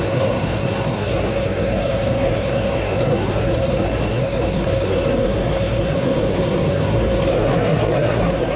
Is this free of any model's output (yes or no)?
no